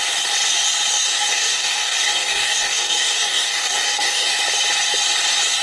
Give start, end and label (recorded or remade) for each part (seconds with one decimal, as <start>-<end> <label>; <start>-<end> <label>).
0.0-0.9 recorded; 0.9-4.3 remade; 4.3-5.6 recorded